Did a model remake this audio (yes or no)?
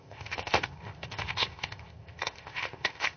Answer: yes